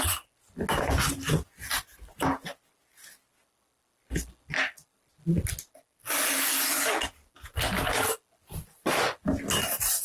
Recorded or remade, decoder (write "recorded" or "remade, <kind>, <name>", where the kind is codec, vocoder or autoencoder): recorded